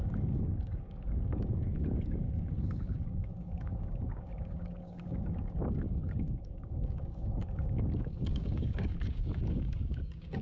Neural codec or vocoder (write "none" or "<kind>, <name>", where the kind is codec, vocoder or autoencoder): codec, DAC